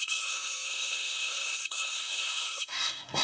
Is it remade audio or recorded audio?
remade